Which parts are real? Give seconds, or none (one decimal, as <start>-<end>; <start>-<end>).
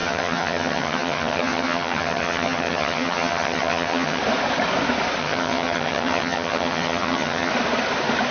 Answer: 4.2-5.2; 7.5-8.3